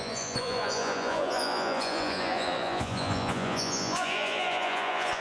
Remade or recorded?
remade